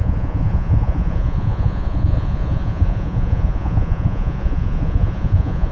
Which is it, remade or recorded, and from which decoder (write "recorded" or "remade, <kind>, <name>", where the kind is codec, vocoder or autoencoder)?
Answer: remade, vocoder, Vocos